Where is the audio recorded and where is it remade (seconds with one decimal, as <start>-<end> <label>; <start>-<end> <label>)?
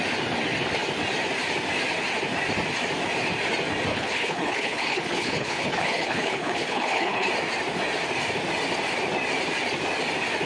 0.0-3.9 recorded; 3.9-7.3 remade; 7.3-10.5 recorded